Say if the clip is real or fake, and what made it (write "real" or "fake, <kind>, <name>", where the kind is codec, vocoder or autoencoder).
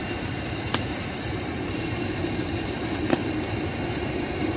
fake, vocoder, BigVGAN v2